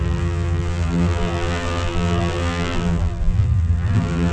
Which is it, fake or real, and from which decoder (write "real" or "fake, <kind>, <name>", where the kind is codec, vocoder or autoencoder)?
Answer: fake, vocoder, BigVGAN v2